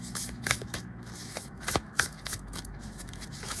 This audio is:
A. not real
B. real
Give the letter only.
A